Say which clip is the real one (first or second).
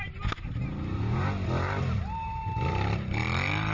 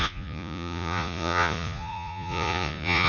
first